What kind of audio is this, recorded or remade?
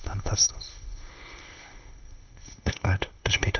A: remade